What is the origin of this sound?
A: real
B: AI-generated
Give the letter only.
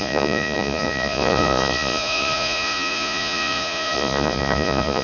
B